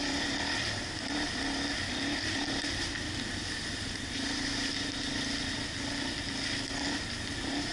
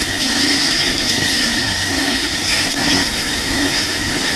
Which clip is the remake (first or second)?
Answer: second